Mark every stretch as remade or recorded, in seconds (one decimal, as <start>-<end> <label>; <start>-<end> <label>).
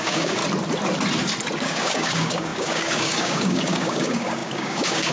0.0-0.4 remade; 0.4-1.6 recorded; 1.6-5.1 remade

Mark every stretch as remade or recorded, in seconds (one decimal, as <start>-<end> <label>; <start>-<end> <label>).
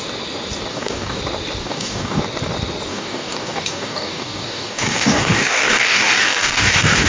0.0-0.7 recorded; 0.7-1.2 remade; 1.2-1.6 recorded; 1.6-2.2 remade; 2.2-2.9 recorded; 2.9-7.1 remade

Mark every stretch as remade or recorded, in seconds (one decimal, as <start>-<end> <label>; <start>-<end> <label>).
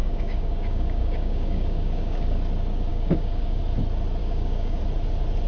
0.0-2.4 remade; 2.4-2.9 recorded; 2.9-3.6 remade; 3.6-4.2 recorded; 4.2-4.8 remade; 4.8-5.5 recorded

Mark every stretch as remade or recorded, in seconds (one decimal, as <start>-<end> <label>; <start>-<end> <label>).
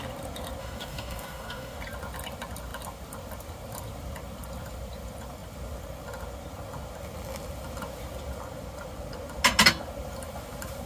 0.0-0.6 recorded; 0.6-1.8 remade; 1.8-10.9 recorded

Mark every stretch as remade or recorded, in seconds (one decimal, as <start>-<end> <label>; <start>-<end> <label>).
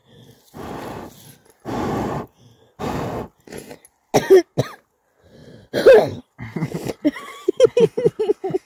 0.0-8.7 recorded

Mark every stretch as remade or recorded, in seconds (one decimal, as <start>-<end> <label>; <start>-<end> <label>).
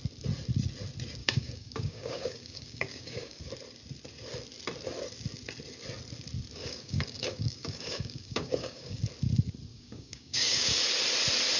0.0-1.2 recorded; 1.2-3.5 remade; 3.5-6.6 recorded; 6.6-9.0 remade; 9.0-9.7 recorded; 9.7-10.8 remade; 10.8-11.6 recorded